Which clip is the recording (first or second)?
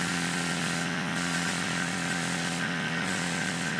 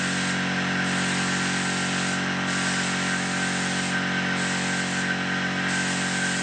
second